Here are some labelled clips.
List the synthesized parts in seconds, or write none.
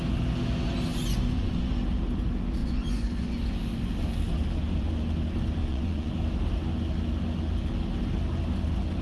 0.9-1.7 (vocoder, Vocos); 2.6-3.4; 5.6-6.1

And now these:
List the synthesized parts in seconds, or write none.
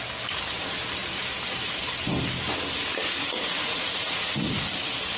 3.2-4.6 (vocoder, Vocos)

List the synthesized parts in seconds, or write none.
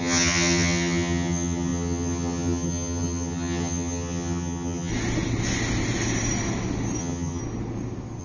0.0-4.9 (vocoder, HiFi-GAN); 7.0-7.4